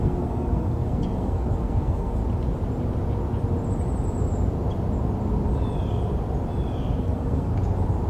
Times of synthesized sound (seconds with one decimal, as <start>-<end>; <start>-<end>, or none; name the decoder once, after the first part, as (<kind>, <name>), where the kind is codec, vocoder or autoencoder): 0.0-2.2 (codec, SNAC); 7.0-7.5